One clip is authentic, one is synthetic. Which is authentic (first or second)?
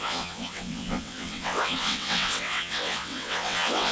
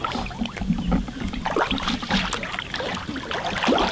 second